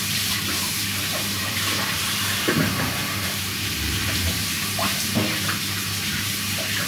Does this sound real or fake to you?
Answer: fake